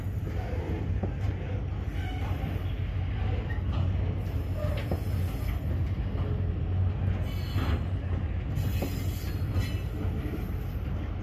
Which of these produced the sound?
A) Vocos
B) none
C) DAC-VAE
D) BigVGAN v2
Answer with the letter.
B